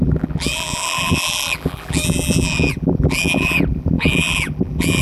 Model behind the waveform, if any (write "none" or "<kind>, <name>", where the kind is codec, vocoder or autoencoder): vocoder, BigVGAN v2